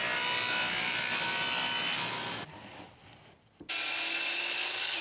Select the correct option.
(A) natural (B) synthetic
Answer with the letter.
A